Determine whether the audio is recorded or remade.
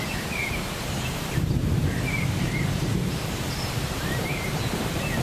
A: remade